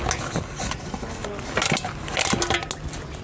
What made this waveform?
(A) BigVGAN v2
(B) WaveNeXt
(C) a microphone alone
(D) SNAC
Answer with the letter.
C